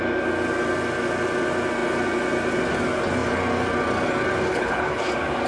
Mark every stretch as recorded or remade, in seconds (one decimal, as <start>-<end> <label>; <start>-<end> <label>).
0.0-4.5 recorded; 4.5-5.1 remade; 5.1-5.5 recorded